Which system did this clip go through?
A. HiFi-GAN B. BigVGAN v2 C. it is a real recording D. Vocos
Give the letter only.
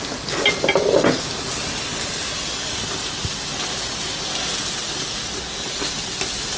C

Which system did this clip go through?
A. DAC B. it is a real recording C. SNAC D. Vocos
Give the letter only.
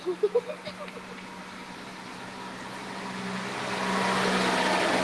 B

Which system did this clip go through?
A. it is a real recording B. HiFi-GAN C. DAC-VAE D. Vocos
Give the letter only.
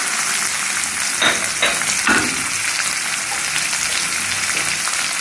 A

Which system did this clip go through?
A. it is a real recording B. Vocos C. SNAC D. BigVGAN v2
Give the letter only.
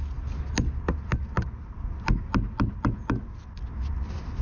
A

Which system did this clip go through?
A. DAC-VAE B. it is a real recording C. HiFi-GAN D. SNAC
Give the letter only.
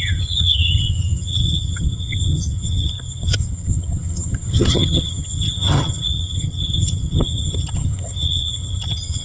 C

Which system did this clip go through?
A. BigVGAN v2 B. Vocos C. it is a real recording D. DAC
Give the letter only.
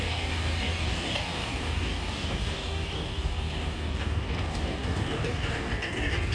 D